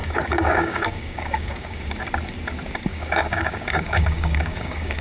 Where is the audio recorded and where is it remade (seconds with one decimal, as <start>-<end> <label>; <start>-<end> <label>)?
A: 0.0-1.8 remade; 1.8-2.9 recorded; 2.9-5.0 remade